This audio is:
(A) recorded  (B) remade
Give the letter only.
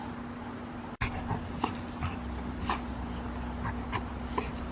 A